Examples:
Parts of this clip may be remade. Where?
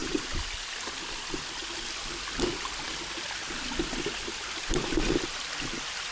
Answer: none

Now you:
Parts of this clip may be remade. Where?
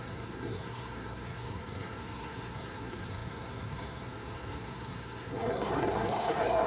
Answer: 0.0-6.7 (codec, SNAC)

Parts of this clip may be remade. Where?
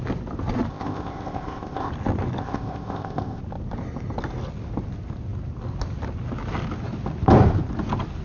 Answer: 0.7-1.9 (codec, ZipCodec); 2.4-3.4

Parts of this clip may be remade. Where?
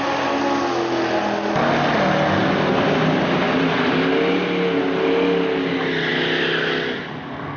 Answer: none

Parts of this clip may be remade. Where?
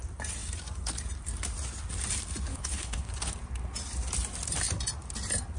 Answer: 2.5-3.1 (codec, HILCodec)